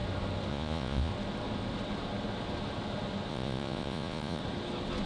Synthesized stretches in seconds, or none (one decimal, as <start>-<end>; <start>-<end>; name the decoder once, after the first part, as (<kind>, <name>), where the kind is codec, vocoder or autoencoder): 0.5-1.1 (vocoder, Vocos); 3.3-4.4